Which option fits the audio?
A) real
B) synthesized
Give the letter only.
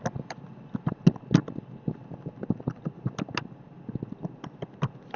A